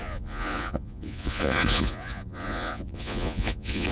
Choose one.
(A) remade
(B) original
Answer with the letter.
A